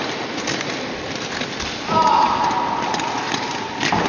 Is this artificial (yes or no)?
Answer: no